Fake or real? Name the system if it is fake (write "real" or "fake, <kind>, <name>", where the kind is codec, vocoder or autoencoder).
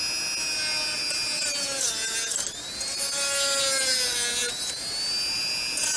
real